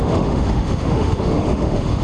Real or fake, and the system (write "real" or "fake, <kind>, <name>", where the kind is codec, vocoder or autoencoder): fake, autoencoder, DAC-VAE